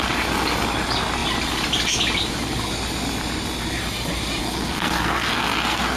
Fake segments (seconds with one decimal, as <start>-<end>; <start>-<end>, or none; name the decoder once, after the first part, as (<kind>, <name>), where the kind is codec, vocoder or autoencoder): 4.4-6.0 (codec, SNAC)